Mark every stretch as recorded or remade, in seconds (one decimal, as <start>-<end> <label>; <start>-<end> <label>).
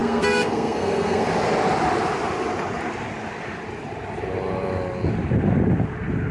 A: 0.0-1.3 remade; 1.3-6.3 recorded